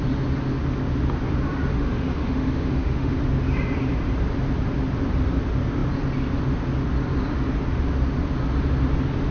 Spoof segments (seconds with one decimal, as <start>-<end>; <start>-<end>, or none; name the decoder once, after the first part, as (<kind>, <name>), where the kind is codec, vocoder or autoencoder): 1.7-3.2 (autoencoder, DAC-VAE)